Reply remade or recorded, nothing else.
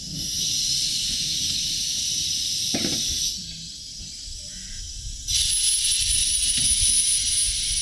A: recorded